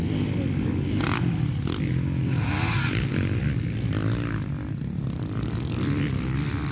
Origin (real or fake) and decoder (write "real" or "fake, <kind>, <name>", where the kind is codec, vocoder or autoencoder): real